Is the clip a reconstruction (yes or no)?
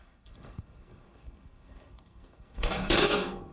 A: yes